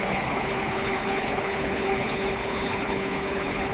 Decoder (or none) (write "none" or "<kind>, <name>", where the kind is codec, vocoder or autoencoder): codec, HILCodec